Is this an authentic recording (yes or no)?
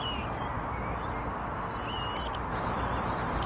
yes